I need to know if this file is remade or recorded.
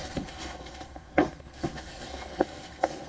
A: remade